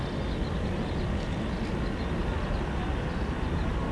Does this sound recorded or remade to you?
recorded